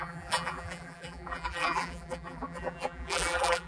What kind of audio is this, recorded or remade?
remade